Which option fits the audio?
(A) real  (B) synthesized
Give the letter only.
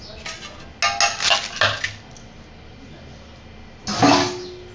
A